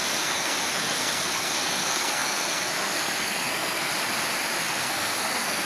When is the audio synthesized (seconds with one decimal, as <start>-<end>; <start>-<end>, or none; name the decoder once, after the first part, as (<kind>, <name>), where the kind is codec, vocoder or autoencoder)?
0.0-3.9 (codec, SNAC); 4.6-5.7